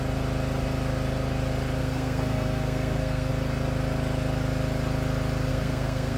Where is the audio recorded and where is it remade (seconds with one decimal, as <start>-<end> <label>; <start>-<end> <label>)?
0.0-1.8 recorded; 1.8-3.3 remade; 3.3-5.5 recorded; 5.5-6.2 remade